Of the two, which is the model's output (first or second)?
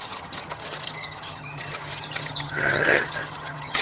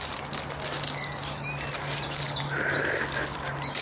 first